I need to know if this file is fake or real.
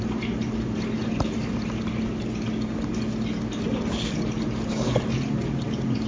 real